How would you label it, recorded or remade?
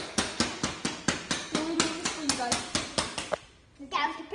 recorded